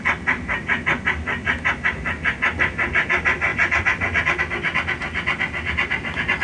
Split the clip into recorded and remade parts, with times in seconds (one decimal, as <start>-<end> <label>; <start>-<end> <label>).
0.0-6.4 recorded